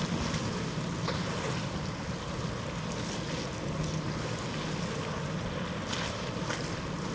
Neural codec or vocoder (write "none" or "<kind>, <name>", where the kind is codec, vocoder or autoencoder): none